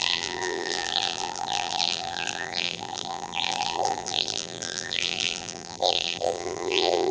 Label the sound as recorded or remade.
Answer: remade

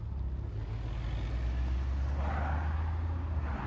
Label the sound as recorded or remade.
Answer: recorded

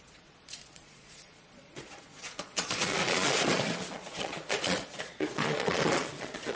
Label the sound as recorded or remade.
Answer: remade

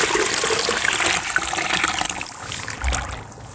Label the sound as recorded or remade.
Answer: recorded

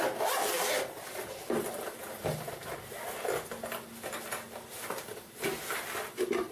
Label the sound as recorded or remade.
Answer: recorded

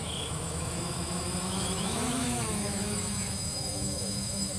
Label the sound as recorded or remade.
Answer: remade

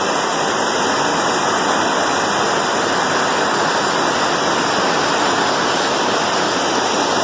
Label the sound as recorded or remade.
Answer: recorded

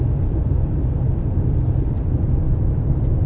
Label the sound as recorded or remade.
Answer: remade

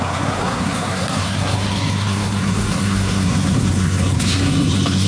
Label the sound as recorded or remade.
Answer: remade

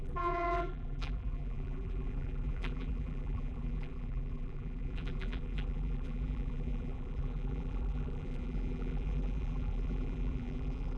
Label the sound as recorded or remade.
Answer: remade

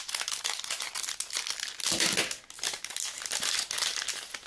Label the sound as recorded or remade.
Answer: recorded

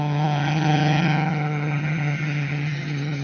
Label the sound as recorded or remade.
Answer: remade